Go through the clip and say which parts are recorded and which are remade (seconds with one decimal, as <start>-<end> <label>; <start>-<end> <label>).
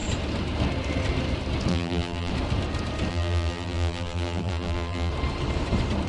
0.0-1.7 recorded; 1.7-2.3 remade; 2.3-3.1 recorded; 3.1-5.1 remade; 5.1-6.1 recorded